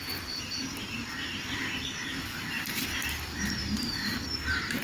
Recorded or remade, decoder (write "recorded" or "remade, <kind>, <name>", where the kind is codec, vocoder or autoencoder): remade, vocoder, BigVGAN v2